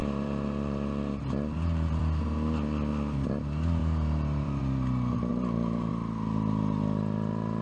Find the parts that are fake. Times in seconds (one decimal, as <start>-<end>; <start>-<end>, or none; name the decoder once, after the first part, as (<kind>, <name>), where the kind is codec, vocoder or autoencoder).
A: 0.0-2.0 (vocoder, BigVGAN v2); 3.8-4.6; 5.3-5.9

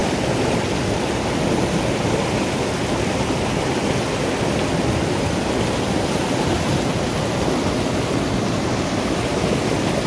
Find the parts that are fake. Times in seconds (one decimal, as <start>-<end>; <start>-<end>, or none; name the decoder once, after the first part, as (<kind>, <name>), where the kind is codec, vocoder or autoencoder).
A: none

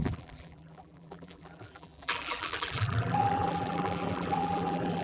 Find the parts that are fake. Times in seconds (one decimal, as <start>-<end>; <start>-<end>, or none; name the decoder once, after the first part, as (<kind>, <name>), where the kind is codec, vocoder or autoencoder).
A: 0.0-5.0 (vocoder, BigVGAN v2)

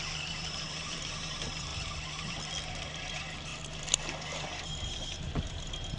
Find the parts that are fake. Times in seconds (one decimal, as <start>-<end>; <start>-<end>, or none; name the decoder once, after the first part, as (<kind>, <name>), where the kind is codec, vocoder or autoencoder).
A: 0.0-1.7 (vocoder, BigVGAN v2); 2.8-3.5; 4.6-6.0

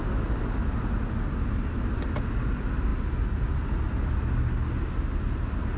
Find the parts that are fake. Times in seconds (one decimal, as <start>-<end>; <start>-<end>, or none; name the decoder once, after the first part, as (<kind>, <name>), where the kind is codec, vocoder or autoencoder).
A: none

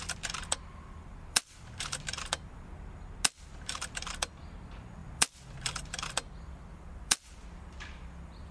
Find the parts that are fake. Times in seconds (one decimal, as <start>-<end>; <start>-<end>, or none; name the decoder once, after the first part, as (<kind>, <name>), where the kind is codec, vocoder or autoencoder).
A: 0.0-2.7 (vocoder, BigVGAN v2); 3.4-8.5

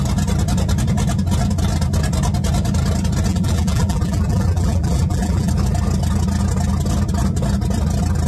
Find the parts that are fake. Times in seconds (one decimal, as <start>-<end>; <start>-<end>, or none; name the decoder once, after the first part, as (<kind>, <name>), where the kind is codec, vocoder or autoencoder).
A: 3.3-5.5 (vocoder, BigVGAN v2)

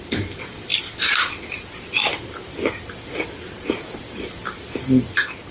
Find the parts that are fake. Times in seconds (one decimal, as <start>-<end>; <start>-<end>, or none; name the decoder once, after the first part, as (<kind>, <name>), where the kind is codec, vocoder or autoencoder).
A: 0.0-0.7 (vocoder, BigVGAN v2); 4.0-5.5